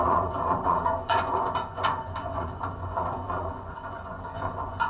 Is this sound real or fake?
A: fake